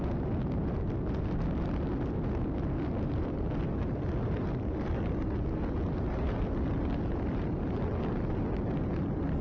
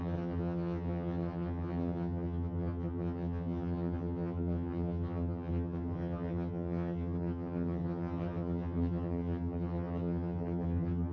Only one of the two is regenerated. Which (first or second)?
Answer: second